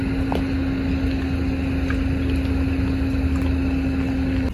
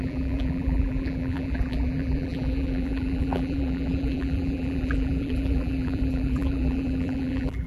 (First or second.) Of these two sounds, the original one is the first